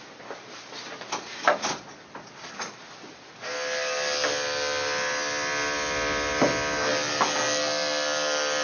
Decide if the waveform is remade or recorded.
recorded